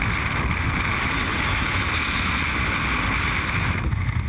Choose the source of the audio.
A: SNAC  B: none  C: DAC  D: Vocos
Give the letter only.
B